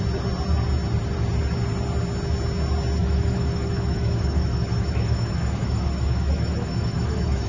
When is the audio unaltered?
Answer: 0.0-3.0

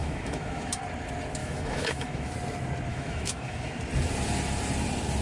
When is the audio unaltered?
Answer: 0.8-1.4; 2.3-2.9; 3.7-5.2